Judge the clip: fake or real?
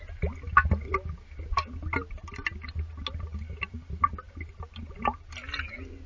real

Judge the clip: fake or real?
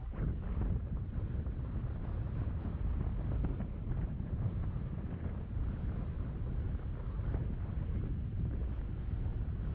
real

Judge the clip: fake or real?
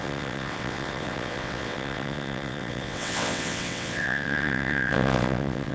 fake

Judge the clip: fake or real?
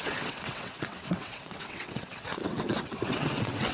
fake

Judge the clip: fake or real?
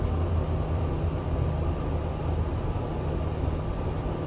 real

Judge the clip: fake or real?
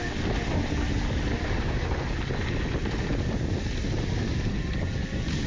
real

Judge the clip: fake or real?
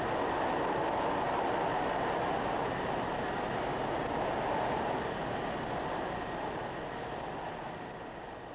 real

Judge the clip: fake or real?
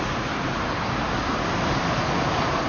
real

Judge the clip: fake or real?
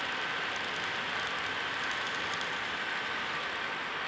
real